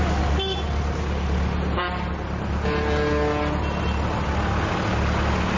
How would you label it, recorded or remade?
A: recorded